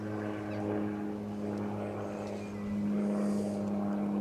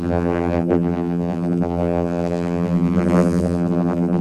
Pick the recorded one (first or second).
first